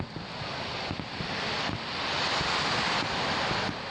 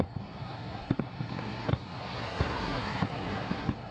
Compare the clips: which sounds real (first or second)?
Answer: first